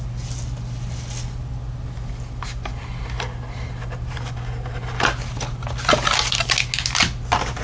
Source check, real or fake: real